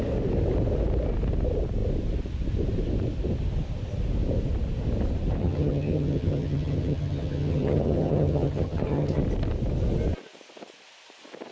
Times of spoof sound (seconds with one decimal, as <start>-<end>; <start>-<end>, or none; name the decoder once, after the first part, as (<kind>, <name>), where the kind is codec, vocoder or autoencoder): 5.4-9.2 (vocoder, HiFi-GAN)